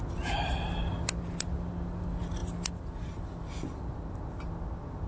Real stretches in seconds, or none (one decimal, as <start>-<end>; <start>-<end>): 0.0-5.1